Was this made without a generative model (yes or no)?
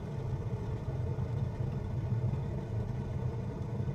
no